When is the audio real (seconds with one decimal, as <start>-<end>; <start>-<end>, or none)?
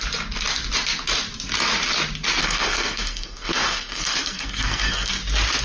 0.0-2.4; 5.1-5.6